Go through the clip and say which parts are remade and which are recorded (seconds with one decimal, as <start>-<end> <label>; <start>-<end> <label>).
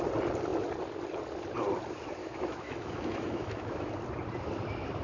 0.0-2.2 recorded; 2.2-3.9 remade; 3.9-5.0 recorded